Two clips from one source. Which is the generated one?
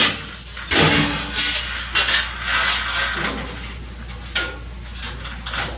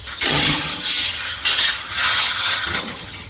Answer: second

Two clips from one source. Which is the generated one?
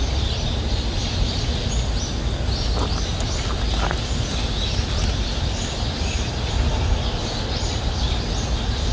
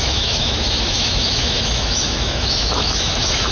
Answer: second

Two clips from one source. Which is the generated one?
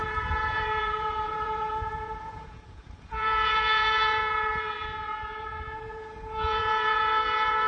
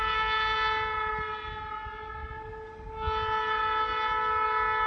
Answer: first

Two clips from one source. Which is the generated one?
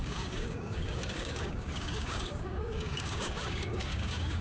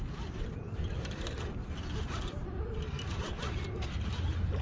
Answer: first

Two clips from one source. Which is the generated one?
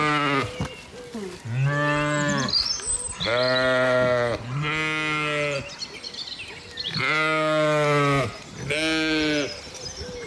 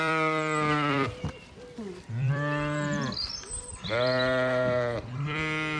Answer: second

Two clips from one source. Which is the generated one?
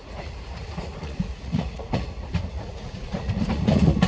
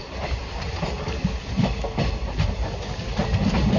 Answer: first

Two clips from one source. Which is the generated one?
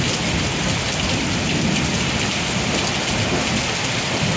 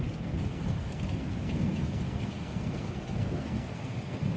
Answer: second